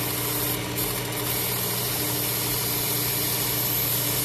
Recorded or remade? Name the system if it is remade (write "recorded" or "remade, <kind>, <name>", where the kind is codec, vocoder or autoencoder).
recorded